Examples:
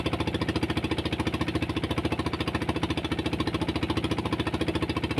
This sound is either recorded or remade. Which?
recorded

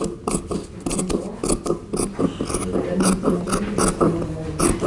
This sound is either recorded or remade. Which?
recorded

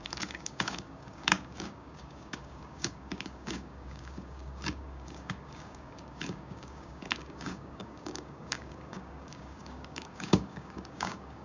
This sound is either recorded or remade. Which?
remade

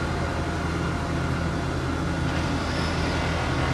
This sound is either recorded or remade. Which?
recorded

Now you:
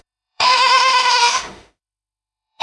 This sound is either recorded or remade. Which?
remade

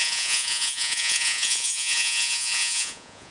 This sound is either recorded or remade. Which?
remade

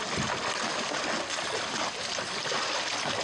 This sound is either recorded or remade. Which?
recorded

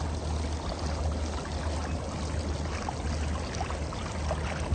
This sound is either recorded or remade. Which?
recorded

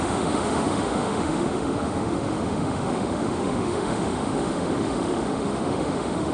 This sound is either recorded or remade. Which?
remade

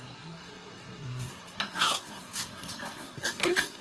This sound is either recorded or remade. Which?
remade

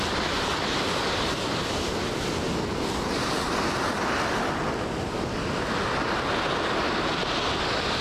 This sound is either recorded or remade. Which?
recorded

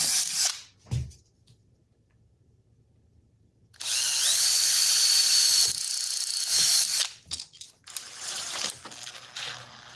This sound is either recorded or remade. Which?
recorded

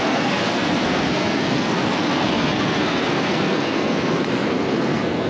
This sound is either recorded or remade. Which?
remade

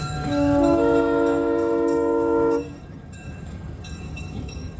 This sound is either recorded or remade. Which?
remade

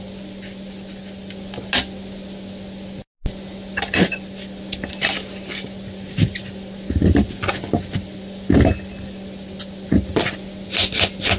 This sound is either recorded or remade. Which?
recorded